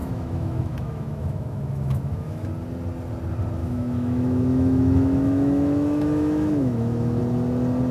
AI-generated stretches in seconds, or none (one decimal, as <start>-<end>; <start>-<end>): 0.0-2.5; 3.6-7.2